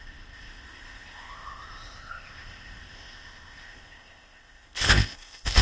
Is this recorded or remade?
remade